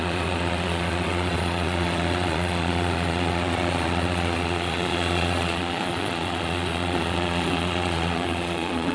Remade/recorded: remade